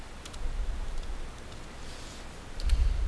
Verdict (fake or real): real